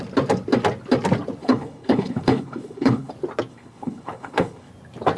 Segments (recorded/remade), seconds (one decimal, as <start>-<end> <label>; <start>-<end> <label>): 0.0-1.4 recorded; 1.4-3.1 remade; 3.1-3.5 recorded; 3.5-4.7 remade; 4.7-5.2 recorded